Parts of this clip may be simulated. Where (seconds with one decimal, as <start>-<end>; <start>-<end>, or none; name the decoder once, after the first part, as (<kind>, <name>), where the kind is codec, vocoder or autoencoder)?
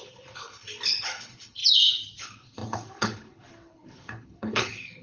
0.0-1.6 (codec, HILCodec); 2.2-5.0